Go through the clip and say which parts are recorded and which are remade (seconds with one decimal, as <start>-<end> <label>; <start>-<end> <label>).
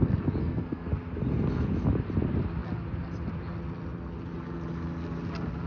0.0-0.4 recorded; 0.4-0.9 remade; 0.9-5.7 recorded